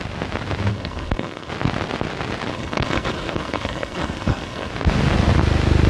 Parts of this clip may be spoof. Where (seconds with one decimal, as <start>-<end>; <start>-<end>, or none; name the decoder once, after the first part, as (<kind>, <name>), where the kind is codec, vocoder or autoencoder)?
0.7-1.5 (codec, SNAC); 2.5-4.7